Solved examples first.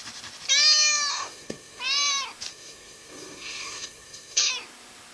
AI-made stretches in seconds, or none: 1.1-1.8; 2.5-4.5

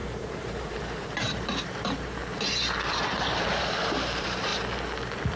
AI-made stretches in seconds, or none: 0.0-2.2; 2.9-4.5